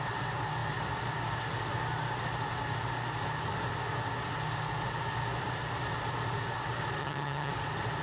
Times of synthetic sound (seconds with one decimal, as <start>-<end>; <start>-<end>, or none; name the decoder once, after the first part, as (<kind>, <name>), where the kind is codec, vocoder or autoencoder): 7.0-7.5 (vocoder, HiFi-GAN)